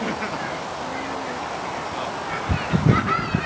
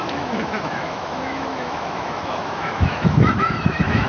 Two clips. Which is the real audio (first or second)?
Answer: first